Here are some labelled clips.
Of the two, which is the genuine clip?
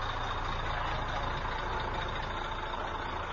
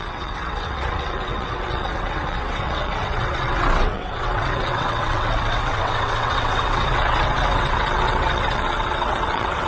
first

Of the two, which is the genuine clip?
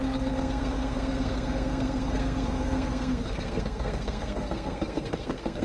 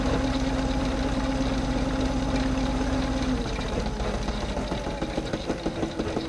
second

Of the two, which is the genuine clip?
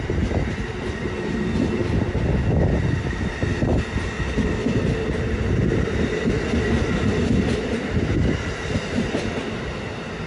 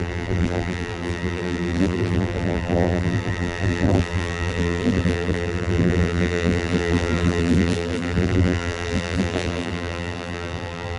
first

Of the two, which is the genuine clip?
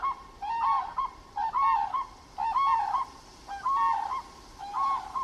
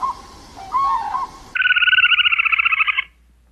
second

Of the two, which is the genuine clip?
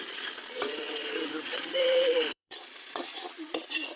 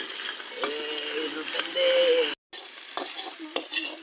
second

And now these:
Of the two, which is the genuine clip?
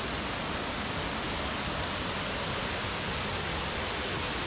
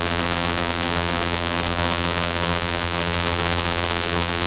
first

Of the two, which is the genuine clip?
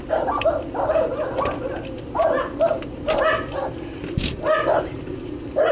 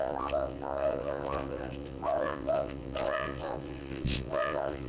first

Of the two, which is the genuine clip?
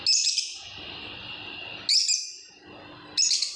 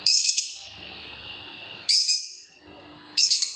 first